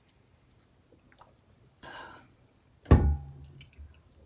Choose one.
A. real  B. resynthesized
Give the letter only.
A